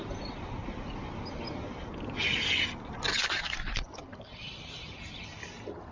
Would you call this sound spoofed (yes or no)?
no